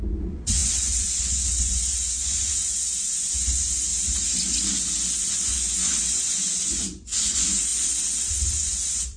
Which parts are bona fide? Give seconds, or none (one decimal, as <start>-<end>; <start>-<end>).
3.9-5.2; 7.7-8.3